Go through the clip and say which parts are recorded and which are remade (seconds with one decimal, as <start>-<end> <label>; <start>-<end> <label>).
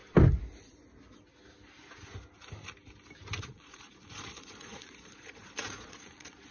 0.0-3.4 recorded; 3.4-6.5 remade